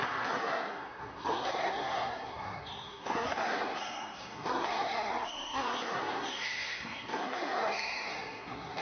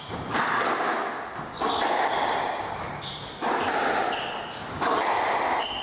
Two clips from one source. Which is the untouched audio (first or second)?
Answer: second